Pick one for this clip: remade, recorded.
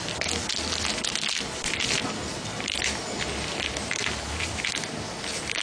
recorded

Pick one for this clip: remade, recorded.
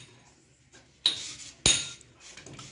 recorded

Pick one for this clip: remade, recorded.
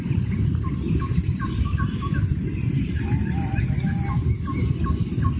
recorded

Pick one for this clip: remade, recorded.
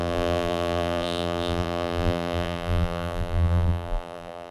remade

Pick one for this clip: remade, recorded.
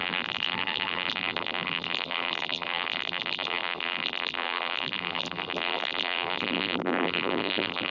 remade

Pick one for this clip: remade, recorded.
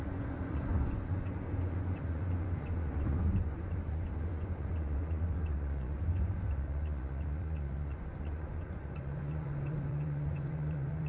remade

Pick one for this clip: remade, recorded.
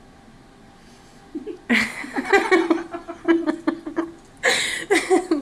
recorded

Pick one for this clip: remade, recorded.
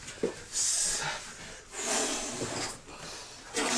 recorded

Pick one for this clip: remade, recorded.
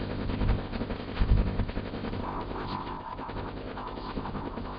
remade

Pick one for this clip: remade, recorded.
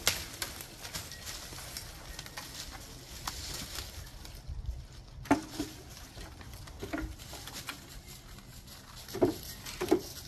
recorded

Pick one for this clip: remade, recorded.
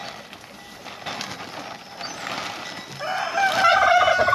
recorded